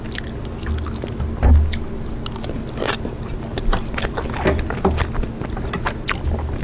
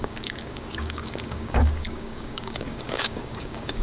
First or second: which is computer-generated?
second